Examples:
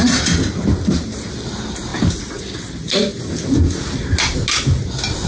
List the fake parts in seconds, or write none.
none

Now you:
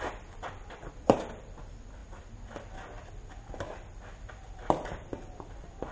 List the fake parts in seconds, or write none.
0.0-2.0 (vocoder, BigVGAN v2); 5.5-5.9

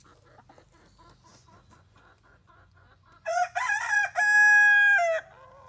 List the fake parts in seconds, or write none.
1.3-4.0 (vocoder, Vocos)

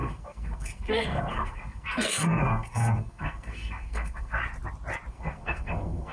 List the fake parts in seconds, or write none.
0.0-4.4 (codec, SNAC); 5.1-6.1

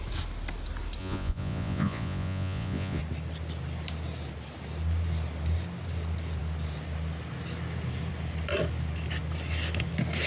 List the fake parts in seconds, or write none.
1.0-3.0 (vocoder, Vocos)

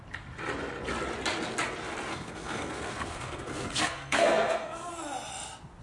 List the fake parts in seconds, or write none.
2.1-4.9 (codec, SNAC)